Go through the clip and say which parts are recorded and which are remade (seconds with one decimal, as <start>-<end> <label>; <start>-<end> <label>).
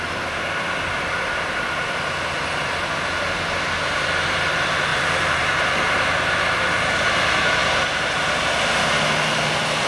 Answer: 0.0-4.9 recorded; 4.9-5.5 remade; 5.5-7.6 recorded; 7.6-8.1 remade; 8.1-9.9 recorded